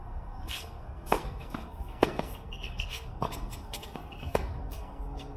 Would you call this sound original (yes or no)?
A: no